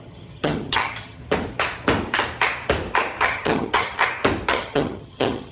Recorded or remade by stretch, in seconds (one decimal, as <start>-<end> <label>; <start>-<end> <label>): 0.0-1.2 remade; 1.2-3.2 recorded; 3.2-4.0 remade; 4.0-4.5 recorded; 4.5-5.5 remade